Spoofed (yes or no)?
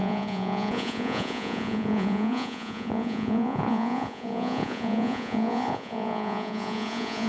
yes